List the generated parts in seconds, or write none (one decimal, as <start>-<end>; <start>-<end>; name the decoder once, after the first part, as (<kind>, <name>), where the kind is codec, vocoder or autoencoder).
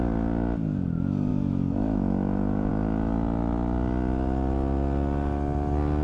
1.3-2.7 (autoencoder, DAC-VAE)